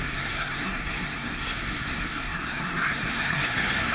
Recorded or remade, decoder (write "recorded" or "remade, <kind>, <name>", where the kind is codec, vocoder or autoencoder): remade, codec, SNAC